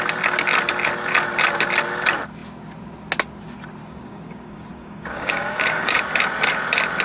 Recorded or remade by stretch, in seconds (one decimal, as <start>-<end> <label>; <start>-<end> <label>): 0.0-3.8 recorded; 3.8-6.0 remade; 6.0-7.0 recorded